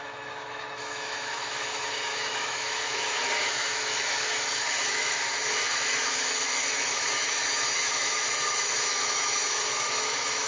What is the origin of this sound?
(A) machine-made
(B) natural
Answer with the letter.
A